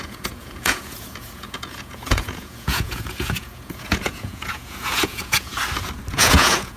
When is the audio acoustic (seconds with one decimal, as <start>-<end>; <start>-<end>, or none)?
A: 5.5-6.1